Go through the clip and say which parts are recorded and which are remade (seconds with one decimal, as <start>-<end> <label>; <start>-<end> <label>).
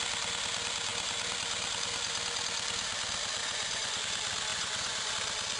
0.0-3.4 recorded; 3.4-4.0 remade; 4.0-4.5 recorded; 4.5-5.1 remade; 5.1-5.6 recorded